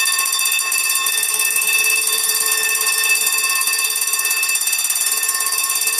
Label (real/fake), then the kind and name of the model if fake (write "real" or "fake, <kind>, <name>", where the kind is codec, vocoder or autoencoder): fake, vocoder, Vocos